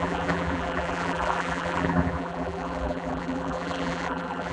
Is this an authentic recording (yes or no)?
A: no